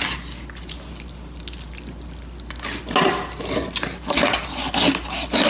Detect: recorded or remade recorded